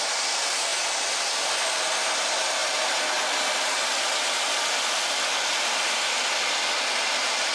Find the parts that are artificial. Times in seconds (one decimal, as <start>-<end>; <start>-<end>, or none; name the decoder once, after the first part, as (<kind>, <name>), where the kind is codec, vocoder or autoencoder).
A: none

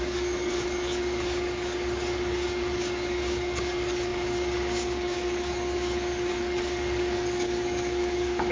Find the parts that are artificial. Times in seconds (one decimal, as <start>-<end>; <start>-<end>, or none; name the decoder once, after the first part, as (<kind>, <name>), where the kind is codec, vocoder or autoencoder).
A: 0.0-8.5 (codec, DAC)

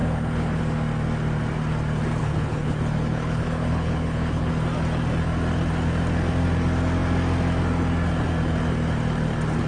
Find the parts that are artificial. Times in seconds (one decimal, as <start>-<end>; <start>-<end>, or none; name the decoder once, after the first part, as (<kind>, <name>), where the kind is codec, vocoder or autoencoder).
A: 0.0-0.6 (codec, HILCodec); 2.2-4.5

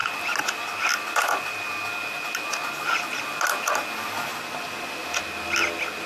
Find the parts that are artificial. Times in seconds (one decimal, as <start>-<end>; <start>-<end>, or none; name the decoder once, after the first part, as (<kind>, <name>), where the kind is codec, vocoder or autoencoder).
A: none

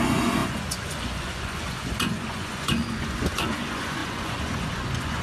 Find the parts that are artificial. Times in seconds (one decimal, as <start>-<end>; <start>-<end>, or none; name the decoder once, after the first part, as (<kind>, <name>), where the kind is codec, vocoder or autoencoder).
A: 0.0-5.2 (vocoder, Vocos)

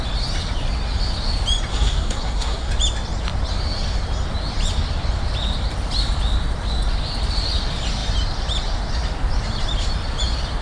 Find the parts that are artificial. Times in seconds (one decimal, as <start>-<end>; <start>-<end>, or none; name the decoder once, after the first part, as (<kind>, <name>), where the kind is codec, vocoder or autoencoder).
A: 1.7-2.7 (codec, SNAC)